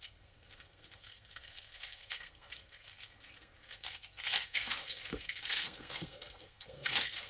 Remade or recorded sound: remade